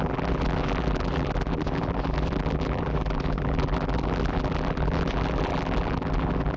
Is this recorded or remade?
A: remade